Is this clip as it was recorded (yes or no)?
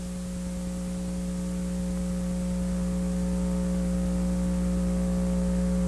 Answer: yes